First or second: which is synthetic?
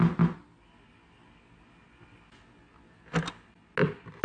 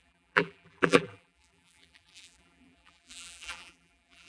second